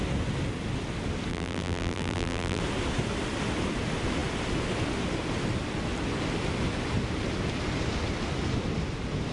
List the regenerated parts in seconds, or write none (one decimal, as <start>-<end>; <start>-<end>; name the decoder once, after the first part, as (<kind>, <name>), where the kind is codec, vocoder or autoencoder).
1.3-2.6 (vocoder, BigVGAN v2)

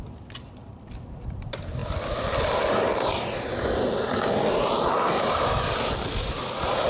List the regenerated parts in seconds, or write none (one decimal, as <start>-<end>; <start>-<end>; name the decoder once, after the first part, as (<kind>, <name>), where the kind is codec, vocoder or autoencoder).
none

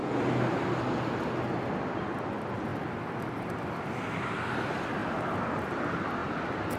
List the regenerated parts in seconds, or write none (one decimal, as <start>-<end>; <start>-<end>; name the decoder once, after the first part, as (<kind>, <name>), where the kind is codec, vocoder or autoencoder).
2.7-4.6 (vocoder, BigVGAN v2)

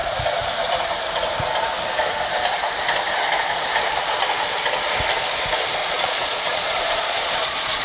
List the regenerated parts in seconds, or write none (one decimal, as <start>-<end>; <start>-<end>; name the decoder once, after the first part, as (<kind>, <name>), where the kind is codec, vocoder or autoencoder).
5.8-7.8 (vocoder, Vocos)

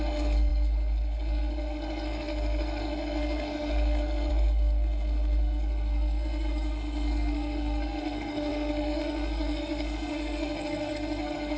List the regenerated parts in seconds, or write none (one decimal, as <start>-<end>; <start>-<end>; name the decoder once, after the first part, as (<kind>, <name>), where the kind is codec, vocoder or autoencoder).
0.0-11.6 (codec, SNAC)

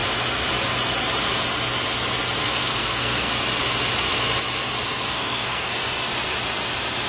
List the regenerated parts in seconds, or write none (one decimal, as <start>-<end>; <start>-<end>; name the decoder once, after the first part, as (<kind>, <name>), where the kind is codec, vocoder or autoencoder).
2.4-3.3 (codec, SNAC); 5.1-5.7